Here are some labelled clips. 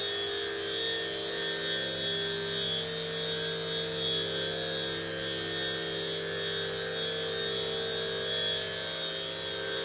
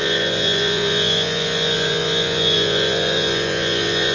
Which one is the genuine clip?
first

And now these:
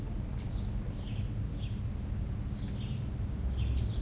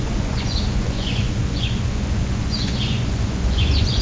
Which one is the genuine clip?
first